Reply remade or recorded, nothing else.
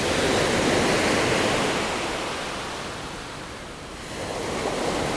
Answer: recorded